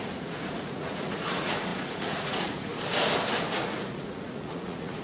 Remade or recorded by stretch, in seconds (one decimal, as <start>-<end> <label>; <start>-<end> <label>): 0.0-2.7 remade; 2.7-3.5 recorded; 3.5-5.0 remade